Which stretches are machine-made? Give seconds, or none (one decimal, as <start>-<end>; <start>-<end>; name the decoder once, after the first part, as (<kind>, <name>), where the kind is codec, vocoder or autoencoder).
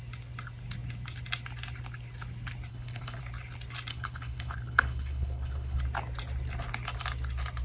2.7-3.2 (codec, HILCodec); 3.9-5.8